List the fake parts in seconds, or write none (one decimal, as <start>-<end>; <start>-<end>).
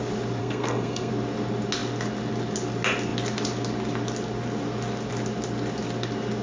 0.4-1.1